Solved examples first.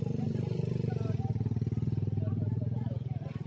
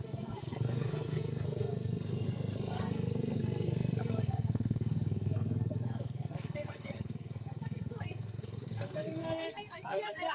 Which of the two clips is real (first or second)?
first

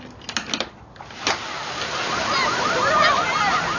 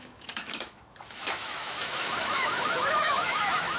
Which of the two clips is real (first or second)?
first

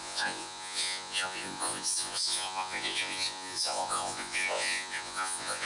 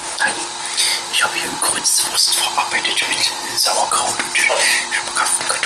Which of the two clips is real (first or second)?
second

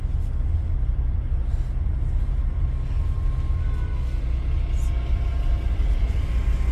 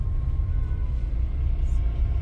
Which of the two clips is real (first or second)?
first